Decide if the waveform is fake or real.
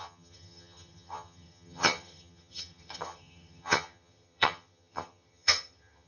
fake